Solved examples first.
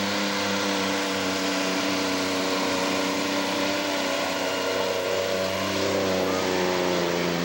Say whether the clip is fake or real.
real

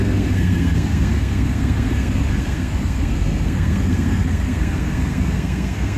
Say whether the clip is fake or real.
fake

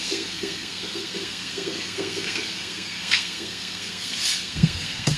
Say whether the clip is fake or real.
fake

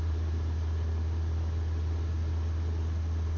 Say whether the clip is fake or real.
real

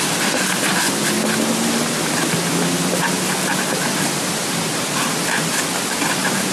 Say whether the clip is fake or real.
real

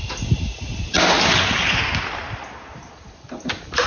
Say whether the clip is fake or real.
real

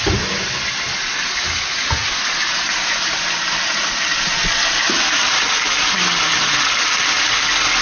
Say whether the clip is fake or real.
real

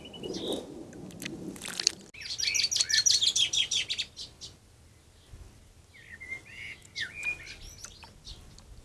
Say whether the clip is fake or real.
real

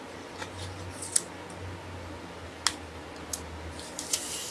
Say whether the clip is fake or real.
real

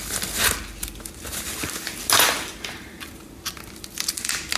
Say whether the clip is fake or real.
real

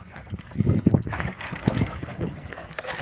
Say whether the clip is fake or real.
fake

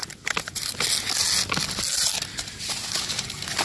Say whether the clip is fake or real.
real